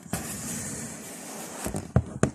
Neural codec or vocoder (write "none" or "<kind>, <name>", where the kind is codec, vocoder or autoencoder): none